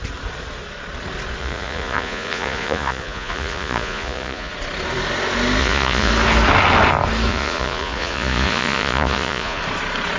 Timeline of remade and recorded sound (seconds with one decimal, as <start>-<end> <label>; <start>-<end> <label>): 0.0-1.4 recorded; 1.4-4.5 remade; 4.5-5.6 recorded; 5.6-6.1 remade; 6.1-7.3 recorded; 7.3-9.6 remade; 9.6-10.2 recorded